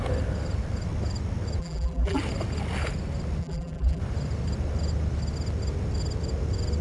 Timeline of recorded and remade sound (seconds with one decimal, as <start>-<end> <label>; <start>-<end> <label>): 0.0-1.6 recorded; 1.6-2.2 remade; 2.2-3.4 recorded; 3.4-4.0 remade; 4.0-6.8 recorded